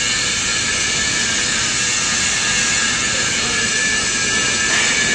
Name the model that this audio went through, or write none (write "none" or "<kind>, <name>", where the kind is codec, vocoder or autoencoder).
none